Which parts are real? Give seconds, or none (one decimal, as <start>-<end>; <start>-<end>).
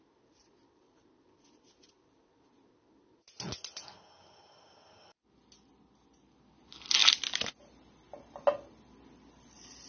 0.0-9.9